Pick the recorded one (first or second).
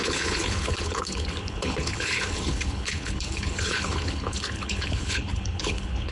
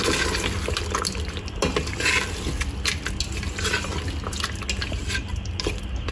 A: second